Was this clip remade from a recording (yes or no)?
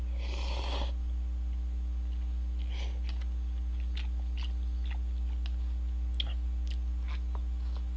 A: no